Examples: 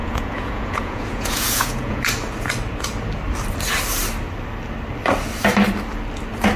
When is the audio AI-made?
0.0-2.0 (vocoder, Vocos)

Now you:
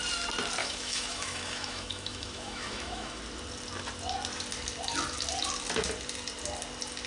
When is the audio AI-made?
0.6-3.2 (autoencoder, DAC-VAE)

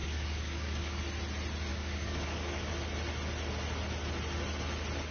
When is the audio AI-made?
0.0-1.0 (codec, DAC); 1.7-2.7